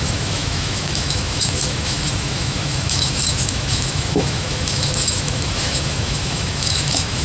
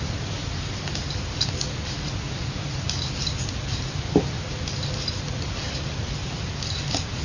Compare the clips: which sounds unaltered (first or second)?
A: second